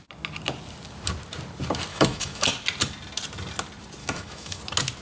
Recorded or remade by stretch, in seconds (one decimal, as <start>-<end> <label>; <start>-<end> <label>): 0.0-1.9 recorded; 1.9-2.5 remade; 2.5-4.0 recorded; 4.0-4.6 remade; 4.6-5.0 recorded